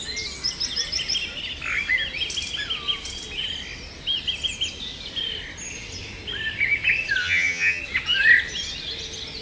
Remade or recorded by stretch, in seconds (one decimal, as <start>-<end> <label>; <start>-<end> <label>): 0.0-7.2 recorded; 7.2-7.8 remade; 7.8-9.4 recorded